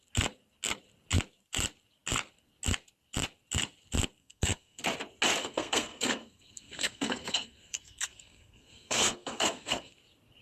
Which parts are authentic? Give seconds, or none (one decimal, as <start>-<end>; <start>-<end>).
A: 0.0-4.2; 4.8-5.4; 9.9-10.4